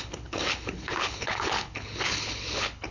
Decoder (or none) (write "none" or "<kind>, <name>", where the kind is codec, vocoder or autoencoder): codec, HILCodec